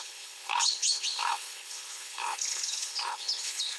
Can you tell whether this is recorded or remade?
remade